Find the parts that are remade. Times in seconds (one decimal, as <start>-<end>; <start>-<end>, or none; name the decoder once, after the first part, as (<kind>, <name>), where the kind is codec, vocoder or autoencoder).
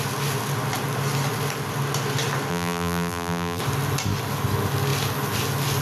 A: 2.5-3.6 (vocoder, BigVGAN v2)